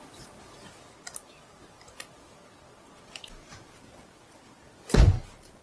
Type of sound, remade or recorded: recorded